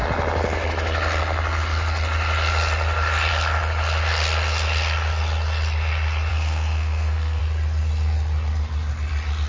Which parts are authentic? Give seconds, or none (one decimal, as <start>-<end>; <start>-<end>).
0.0-6.3; 7.4-9.5